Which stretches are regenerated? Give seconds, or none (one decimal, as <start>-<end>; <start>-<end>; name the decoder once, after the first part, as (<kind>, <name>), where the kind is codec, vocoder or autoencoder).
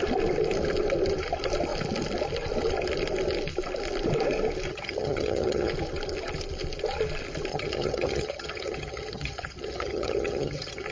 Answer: 4.7-5.7 (vocoder, HiFi-GAN); 7.5-10.9